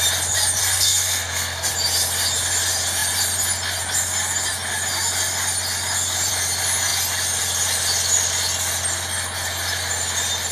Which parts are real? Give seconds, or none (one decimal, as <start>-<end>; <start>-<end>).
0.0-0.6; 1.7-10.5